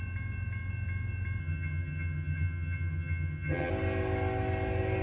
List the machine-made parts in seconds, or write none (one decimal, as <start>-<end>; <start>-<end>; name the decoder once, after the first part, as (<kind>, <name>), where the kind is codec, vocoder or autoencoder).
1.4-3.7 (vocoder, HiFi-GAN)